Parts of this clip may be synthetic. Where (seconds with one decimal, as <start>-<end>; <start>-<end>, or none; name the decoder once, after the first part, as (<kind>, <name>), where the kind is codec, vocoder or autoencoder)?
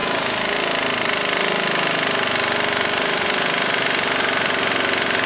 none